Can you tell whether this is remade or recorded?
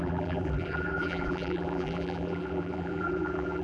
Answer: remade